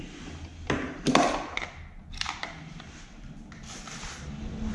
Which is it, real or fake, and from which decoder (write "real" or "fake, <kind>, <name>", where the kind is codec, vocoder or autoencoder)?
real